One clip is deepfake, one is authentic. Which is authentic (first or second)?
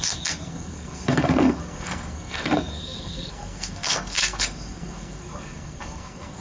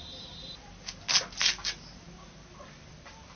second